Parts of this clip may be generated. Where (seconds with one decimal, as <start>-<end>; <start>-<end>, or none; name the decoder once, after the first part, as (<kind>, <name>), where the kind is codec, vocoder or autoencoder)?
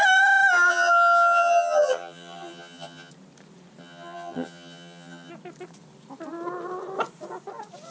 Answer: 0.7-3.1 (vocoder, HiFi-GAN); 3.8-5.3